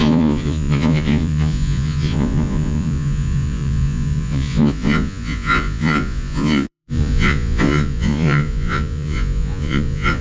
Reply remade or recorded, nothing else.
remade